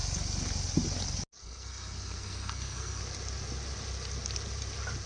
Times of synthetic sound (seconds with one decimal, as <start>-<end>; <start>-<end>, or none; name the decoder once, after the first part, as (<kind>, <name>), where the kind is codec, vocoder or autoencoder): 1.4-3.0 (codec, SNAC)